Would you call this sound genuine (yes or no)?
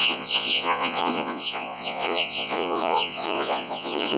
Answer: no